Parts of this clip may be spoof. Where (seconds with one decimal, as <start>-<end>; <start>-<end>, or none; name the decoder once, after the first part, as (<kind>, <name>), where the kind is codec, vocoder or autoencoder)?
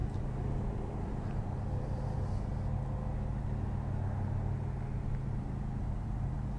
0.0-2.5 (vocoder, BigVGAN v2); 5.8-6.6